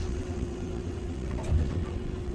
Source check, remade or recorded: remade